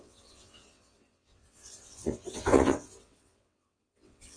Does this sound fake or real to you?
fake